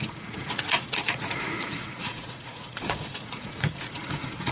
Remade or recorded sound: remade